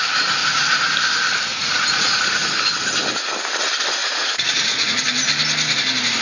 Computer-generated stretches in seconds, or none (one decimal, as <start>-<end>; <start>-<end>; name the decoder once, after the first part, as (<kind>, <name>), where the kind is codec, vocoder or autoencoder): 0.4-0.9 (vocoder, Vocos); 1.5-2.5; 4.0-5.0